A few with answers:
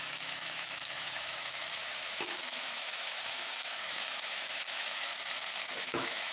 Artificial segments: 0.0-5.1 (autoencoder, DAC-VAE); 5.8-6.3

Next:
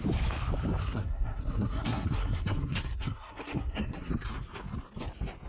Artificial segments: 0.8-4.1 (codec, SNAC)

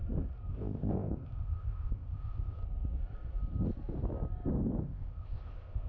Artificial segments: 0.5-2.6 (codec, ZipCodec); 4.8-5.9

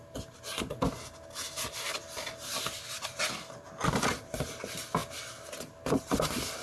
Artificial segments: none

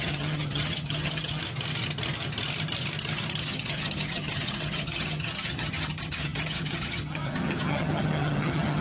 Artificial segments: 0.0-1.4 (vocoder, HiFi-GAN); 3.4-8.8